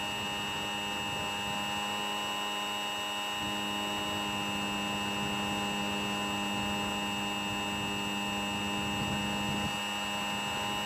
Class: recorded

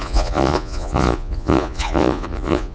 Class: remade